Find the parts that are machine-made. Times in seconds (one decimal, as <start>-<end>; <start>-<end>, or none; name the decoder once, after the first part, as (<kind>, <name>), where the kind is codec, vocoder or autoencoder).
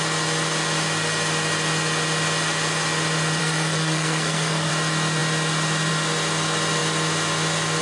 3.4-4.7 (codec, SNAC)